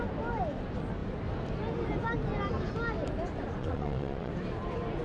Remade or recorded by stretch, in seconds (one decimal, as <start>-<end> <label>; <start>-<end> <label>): 0.0-3.6 recorded; 3.6-4.3 remade; 4.3-5.0 recorded